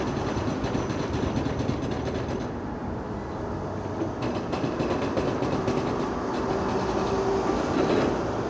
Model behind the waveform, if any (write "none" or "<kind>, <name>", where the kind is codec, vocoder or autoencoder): none